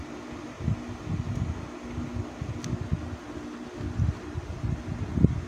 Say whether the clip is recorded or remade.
recorded